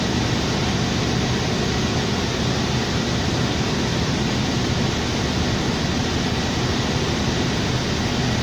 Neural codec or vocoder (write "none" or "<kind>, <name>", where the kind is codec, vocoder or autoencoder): none